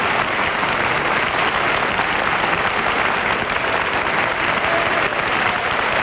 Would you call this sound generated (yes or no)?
no